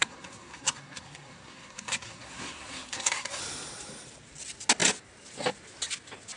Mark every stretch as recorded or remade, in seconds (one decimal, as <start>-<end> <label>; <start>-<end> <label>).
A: 0.0-3.4 remade; 3.4-6.4 recorded